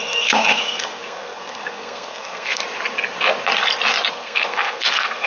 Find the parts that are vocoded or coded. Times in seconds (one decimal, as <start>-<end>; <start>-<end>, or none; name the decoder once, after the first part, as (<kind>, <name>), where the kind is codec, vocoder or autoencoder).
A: 0.0-2.6 (codec, SNAC); 4.1-5.3